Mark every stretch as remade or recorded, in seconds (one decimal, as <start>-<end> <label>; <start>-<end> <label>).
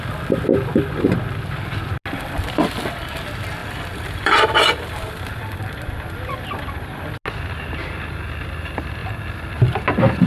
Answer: 0.0-3.6 recorded; 3.6-5.1 remade; 5.1-10.3 recorded